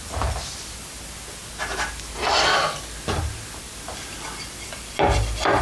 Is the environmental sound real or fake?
real